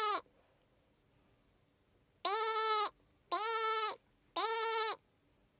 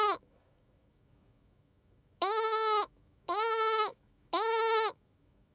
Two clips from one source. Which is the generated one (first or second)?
second